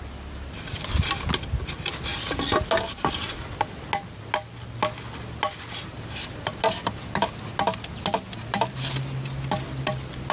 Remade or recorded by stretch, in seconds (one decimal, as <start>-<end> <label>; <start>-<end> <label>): 0.0-10.3 recorded